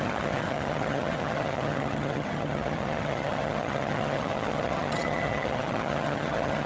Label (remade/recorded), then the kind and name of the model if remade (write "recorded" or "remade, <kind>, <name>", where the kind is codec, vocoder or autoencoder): remade, vocoder, HiFi-GAN